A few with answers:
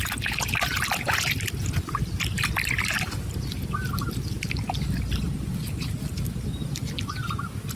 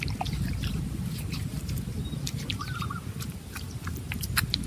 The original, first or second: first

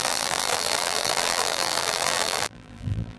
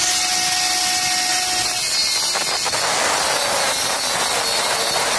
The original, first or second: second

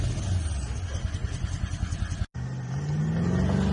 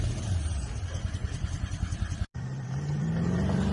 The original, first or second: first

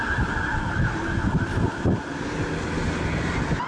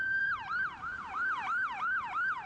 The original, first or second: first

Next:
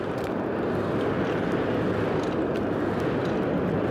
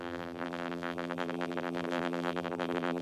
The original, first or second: first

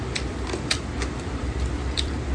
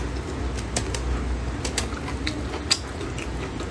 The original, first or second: second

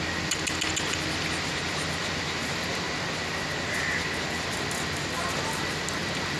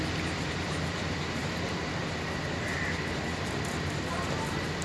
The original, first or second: first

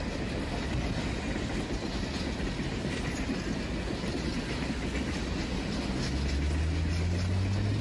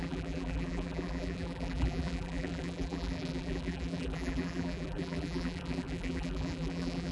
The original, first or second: first